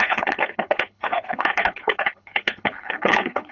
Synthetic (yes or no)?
yes